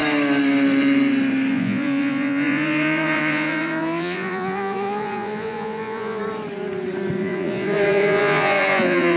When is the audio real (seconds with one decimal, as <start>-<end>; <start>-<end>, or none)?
0.0-1.5; 6.2-7.2